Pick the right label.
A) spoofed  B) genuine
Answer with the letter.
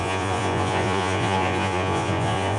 A